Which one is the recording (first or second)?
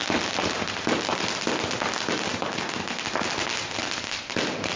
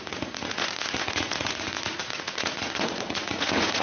first